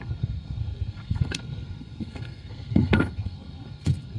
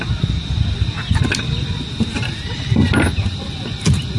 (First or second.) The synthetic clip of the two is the first